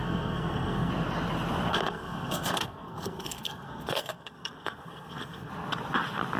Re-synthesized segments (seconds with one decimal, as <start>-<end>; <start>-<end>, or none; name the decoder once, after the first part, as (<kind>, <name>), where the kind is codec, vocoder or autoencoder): 0.0-0.9 (codec, SNAC); 1.7-5.5